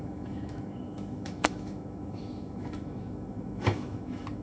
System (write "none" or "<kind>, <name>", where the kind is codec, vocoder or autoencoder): autoencoder, DAC-VAE